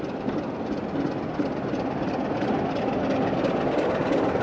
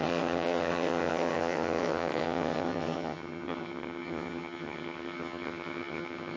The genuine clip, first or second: first